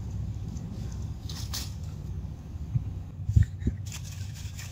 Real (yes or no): no